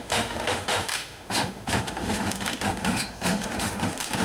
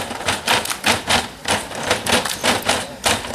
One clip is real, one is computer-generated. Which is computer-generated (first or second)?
first